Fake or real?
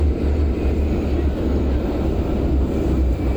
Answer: real